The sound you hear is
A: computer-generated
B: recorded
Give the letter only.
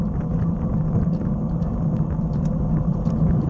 B